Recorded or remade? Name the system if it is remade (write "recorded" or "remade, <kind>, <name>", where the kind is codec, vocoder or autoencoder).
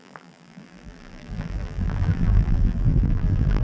remade, vocoder, BigVGAN v2